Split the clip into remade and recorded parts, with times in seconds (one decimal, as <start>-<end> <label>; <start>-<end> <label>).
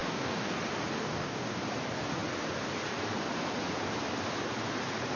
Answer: 0.0-0.6 remade; 0.6-1.0 recorded; 1.0-1.6 remade; 1.6-5.2 recorded